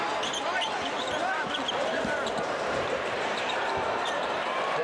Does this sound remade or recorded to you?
remade